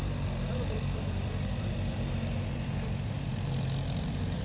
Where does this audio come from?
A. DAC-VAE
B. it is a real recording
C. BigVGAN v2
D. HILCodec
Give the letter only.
C